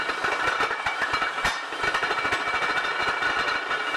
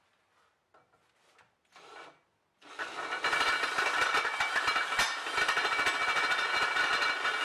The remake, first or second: first